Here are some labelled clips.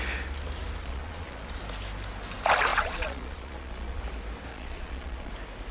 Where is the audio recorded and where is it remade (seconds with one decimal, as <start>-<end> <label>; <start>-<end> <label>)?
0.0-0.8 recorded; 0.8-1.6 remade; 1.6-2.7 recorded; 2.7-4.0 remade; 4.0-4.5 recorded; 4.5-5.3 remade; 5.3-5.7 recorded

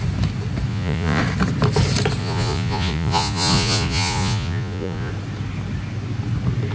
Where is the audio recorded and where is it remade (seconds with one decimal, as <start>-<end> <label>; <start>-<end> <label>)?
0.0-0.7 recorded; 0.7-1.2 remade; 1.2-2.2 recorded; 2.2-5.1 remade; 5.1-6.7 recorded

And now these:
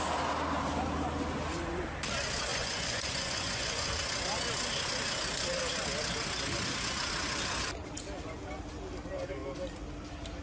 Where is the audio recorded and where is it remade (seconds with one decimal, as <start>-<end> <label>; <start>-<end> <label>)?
0.0-2.5 recorded; 2.5-3.9 remade; 3.9-10.4 recorded

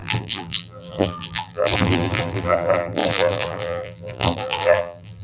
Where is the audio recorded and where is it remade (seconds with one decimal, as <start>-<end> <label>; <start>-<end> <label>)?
0.0-5.2 remade